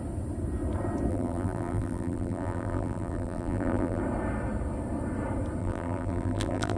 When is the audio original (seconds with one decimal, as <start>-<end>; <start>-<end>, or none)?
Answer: 0.0-1.1; 4.0-5.6